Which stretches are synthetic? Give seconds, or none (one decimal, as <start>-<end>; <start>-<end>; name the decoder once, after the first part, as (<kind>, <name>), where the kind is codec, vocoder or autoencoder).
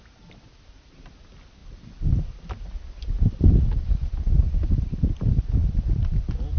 none